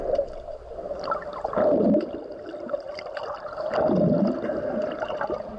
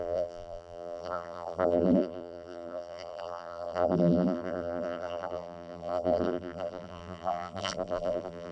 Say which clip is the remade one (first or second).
second